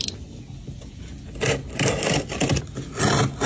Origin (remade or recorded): recorded